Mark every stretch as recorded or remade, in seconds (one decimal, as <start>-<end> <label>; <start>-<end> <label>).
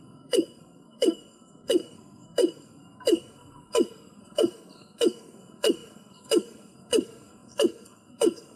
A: 0.0-8.6 remade